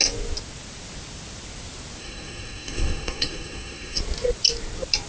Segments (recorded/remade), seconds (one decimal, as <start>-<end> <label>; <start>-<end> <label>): 0.0-2.0 recorded; 2.0-4.0 remade; 4.0-5.1 recorded